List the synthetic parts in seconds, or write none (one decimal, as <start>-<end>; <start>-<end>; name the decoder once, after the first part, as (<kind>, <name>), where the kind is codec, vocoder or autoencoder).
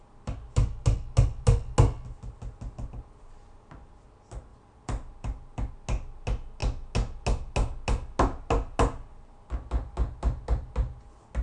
4.5-5.7 (vocoder, BigVGAN v2)